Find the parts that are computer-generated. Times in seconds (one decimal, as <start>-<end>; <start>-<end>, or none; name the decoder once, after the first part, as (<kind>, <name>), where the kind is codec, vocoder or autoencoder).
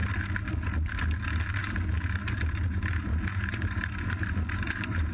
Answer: 1.6-5.1 (vocoder, BigVGAN v2)